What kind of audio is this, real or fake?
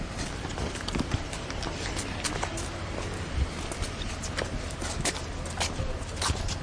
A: real